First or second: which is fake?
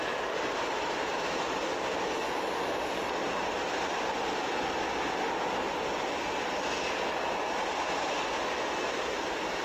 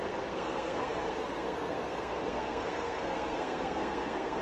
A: second